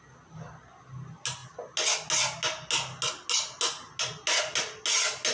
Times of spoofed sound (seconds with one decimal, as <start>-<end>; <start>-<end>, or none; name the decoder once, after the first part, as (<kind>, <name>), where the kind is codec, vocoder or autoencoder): none